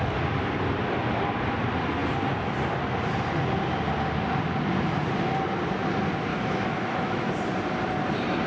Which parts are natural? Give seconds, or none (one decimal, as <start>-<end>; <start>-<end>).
0.0-6.3; 7.3-8.5